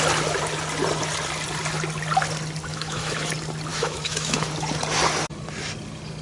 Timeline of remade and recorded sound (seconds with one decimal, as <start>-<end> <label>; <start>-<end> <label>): 0.0-2.7 recorded; 2.7-3.3 remade; 3.3-3.7 recorded; 3.7-4.5 remade; 4.5-6.2 recorded